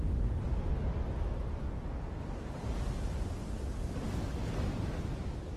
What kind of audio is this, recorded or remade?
recorded